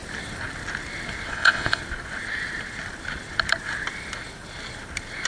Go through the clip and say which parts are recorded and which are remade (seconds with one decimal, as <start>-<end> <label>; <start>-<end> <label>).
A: 0.0-1.3 recorded; 1.3-1.8 remade; 1.8-5.3 recorded